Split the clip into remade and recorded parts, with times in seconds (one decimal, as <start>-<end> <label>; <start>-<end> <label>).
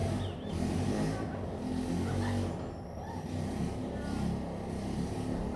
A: 0.0-5.6 recorded